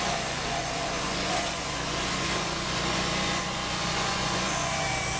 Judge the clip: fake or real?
fake